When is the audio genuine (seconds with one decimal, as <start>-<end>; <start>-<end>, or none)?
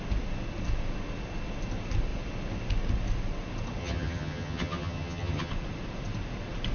0.0-3.8; 5.5-6.7